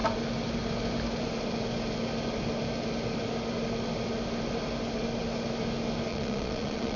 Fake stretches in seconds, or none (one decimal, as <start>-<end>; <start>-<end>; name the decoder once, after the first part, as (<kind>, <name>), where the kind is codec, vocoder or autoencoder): 6.1-7.0 (vocoder, Vocos)